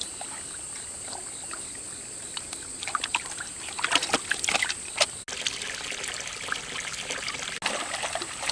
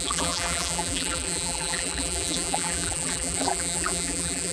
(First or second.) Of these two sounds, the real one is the first